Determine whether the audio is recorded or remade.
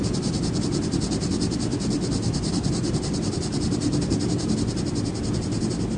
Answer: recorded